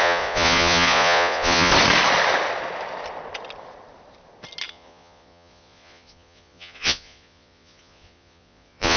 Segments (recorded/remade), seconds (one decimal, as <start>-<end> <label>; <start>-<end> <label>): 0.0-1.7 remade; 1.7-4.7 recorded; 4.7-9.0 remade